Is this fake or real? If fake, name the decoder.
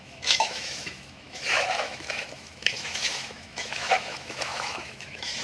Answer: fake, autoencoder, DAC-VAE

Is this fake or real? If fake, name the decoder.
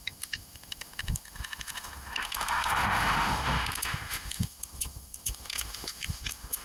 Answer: fake, autoencoder, DAC-VAE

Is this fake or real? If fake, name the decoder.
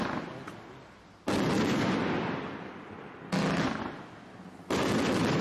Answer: real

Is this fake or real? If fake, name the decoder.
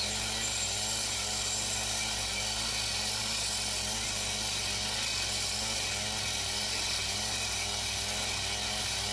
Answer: real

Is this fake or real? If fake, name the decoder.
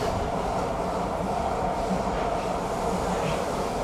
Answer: real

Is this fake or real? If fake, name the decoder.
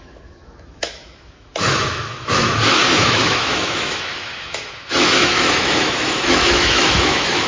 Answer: fake, autoencoder, DAC-VAE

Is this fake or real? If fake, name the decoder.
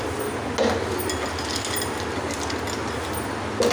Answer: real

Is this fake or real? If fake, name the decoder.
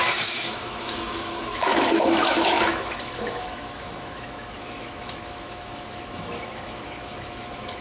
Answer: fake, autoencoder, DAC-VAE